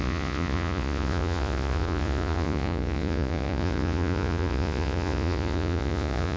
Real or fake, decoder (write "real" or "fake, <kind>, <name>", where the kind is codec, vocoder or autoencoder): fake, vocoder, Vocos